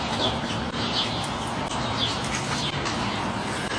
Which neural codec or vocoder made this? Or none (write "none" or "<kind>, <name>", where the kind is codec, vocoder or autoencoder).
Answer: none